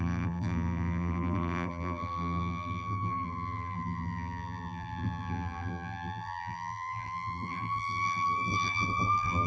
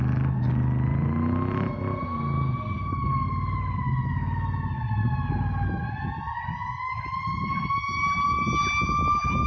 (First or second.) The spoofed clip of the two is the first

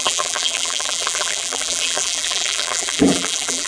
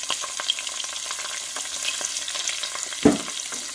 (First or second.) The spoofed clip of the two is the first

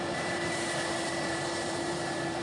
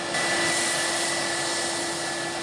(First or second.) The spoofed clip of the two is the first